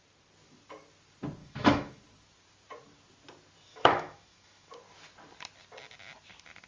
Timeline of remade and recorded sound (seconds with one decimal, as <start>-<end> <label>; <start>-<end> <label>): 0.0-1.4 recorded; 1.4-2.0 remade; 2.0-3.7 recorded; 3.7-4.7 remade; 4.7-6.7 recorded